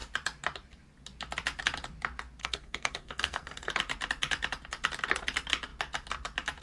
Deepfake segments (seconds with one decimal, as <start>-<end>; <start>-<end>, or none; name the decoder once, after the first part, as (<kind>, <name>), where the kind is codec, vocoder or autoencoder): 2.4-3.7 (codec, SNAC)